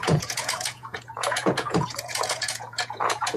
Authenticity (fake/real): fake